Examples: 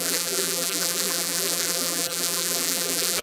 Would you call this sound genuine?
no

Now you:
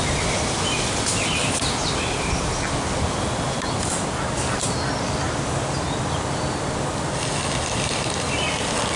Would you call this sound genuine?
yes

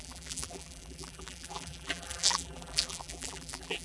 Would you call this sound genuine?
no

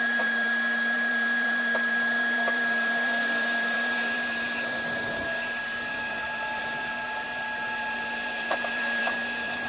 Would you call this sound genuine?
no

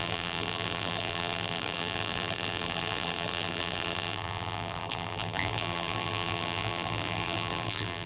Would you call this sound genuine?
no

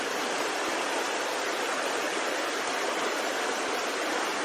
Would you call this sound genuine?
no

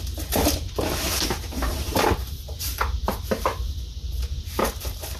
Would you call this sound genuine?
no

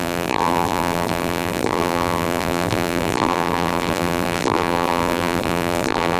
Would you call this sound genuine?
no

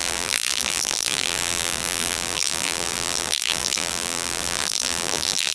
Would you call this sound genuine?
no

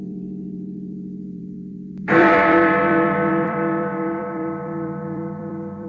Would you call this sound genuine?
no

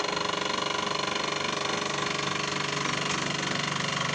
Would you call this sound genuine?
yes